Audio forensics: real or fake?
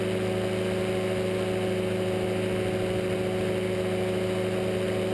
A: real